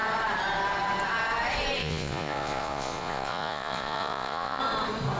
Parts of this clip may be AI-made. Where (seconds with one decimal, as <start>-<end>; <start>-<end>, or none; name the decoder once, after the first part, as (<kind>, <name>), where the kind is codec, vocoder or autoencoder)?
1.8-4.6 (vocoder, Vocos)